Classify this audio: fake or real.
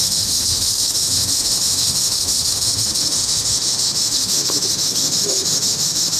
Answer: fake